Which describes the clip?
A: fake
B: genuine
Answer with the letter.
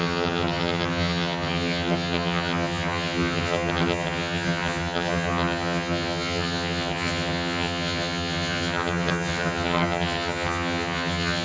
A